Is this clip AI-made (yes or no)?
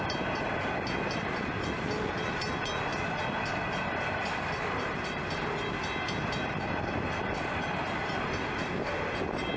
no